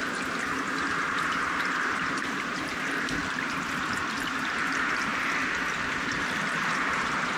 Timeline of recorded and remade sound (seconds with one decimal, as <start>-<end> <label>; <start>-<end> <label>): 0.0-3.2 remade; 3.2-4.4 recorded; 4.4-5.1 remade; 5.1-6.2 recorded; 6.2-7.4 remade